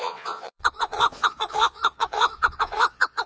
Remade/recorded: remade